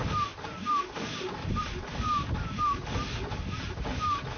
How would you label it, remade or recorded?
recorded